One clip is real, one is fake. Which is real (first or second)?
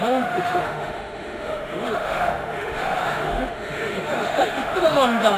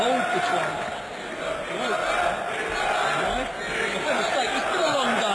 second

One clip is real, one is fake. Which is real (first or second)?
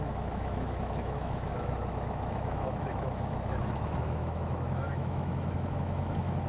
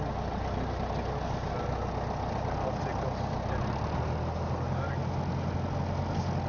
second